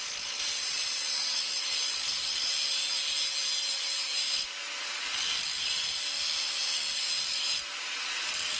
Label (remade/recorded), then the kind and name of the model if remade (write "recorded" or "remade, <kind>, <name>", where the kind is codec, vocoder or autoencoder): recorded